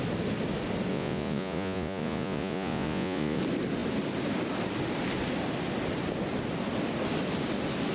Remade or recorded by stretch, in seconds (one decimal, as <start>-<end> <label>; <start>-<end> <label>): 0.0-0.9 recorded; 0.9-3.4 remade; 3.4-7.9 recorded